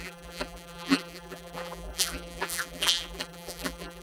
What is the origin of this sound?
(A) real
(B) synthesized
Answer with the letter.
B